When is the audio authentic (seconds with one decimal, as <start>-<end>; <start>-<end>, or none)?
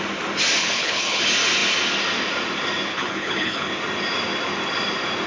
0.0-0.6; 1.2-2.9; 3.7-5.3